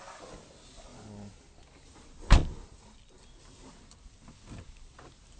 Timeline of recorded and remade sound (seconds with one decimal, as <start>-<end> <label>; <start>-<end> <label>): 0.0-0.9 recorded; 0.9-1.6 remade; 1.6-2.4 recorded; 2.4-3.2 remade; 3.2-5.4 recorded